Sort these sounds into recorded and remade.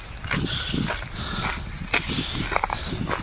recorded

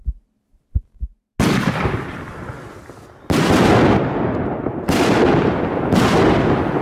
recorded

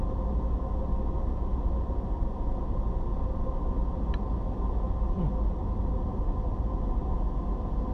recorded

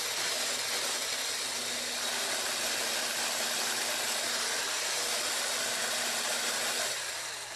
recorded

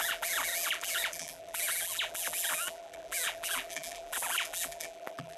remade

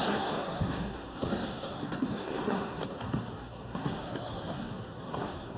remade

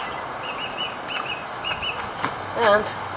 recorded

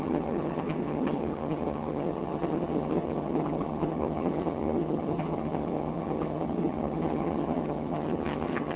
remade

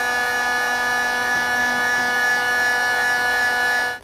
recorded